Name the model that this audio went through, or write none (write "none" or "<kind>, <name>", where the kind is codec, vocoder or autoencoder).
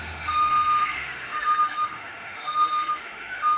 autoencoder, DAC-VAE